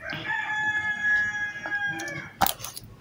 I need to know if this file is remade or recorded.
recorded